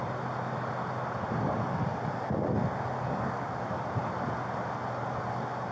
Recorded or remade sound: recorded